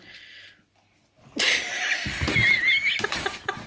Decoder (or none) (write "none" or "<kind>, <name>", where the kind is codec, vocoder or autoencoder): none